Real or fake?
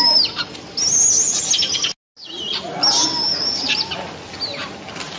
real